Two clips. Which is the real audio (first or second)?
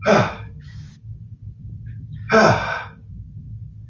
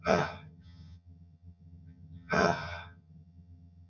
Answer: first